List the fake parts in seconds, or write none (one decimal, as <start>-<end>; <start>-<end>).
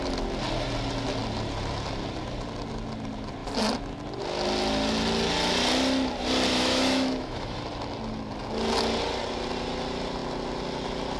6.5-7.6